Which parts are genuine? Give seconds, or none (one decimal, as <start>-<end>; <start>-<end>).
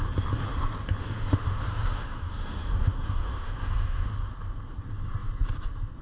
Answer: 0.0-1.0; 4.3-6.0